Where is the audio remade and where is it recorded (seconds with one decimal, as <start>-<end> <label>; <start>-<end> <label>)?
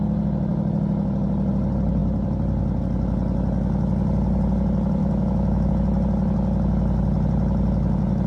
0.0-5.0 recorded; 5.0-5.7 remade; 5.7-8.3 recorded